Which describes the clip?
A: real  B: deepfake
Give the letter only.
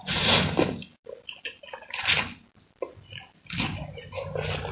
A